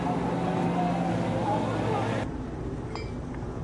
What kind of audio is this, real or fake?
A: real